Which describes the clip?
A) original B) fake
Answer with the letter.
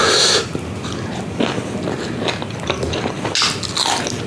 A